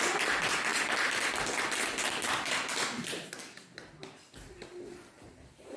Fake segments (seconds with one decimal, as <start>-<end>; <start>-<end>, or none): none